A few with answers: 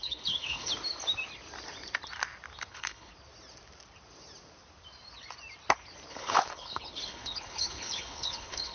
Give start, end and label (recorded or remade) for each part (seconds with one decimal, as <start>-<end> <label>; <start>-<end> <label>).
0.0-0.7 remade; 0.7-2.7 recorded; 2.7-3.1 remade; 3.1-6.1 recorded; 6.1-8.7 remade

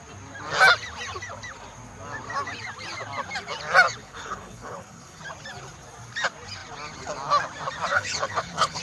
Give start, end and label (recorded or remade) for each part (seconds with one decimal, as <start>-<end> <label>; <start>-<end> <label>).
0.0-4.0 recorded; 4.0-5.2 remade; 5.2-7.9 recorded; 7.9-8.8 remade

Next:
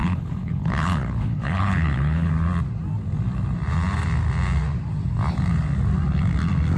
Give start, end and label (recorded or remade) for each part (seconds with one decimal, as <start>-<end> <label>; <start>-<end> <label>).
0.0-2.3 remade; 2.3-6.8 recorded

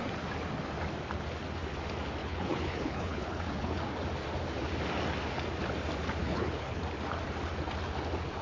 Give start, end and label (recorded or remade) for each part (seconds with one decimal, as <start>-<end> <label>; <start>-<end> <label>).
0.0-2.2 recorded; 2.2-3.8 remade; 3.8-6.2 recorded; 6.2-6.8 remade; 6.8-8.4 recorded

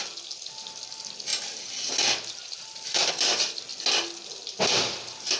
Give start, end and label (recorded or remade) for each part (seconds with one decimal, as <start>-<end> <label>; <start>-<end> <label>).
0.0-5.4 recorded

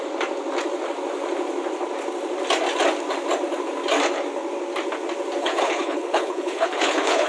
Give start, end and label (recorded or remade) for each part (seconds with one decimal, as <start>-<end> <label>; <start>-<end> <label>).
0.0-5.4 recorded; 5.4-7.3 remade

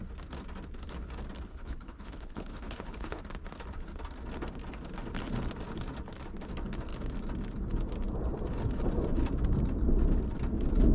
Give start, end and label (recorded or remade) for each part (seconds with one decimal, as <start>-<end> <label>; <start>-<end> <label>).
0.0-1.5 recorded; 1.5-3.2 remade; 3.2-10.9 recorded